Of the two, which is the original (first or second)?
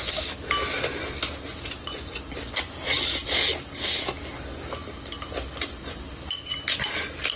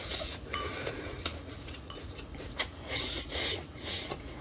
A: first